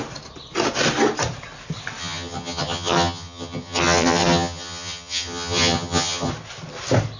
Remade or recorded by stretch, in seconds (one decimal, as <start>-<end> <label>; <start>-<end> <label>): 0.0-2.0 recorded; 2.0-6.3 remade; 6.3-7.2 recorded